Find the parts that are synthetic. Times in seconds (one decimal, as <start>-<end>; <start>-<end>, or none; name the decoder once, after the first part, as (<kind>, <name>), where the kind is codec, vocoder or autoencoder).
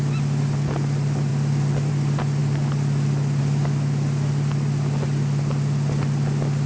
none